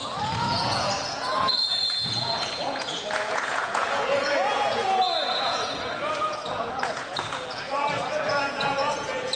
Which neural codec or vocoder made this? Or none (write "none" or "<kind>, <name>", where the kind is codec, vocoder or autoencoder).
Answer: vocoder, Vocos